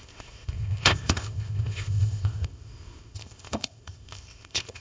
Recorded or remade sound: remade